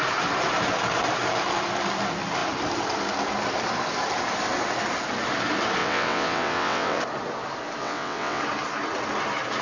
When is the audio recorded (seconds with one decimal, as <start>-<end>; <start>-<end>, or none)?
0.0-5.8; 7.0-7.8; 8.4-9.6